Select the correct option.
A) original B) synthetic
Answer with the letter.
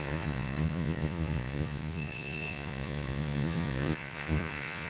B